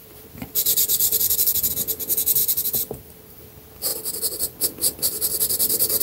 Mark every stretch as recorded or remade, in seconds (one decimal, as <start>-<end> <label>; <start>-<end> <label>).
0.0-1.7 remade; 1.7-2.4 recorded; 2.4-3.4 remade; 3.4-6.0 recorded